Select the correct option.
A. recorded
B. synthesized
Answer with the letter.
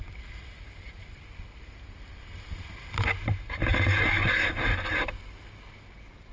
A